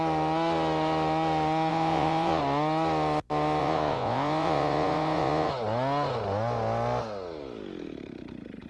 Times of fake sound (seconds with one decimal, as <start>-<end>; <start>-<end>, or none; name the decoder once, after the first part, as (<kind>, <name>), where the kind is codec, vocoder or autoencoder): 1.7-2.4 (vocoder, Vocos); 3.6-5.5